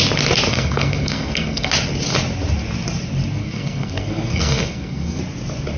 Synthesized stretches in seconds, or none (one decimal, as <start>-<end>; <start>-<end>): 0.5-1.7; 3.4-5.2